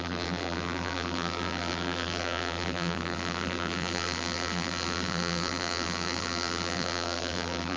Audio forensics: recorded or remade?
remade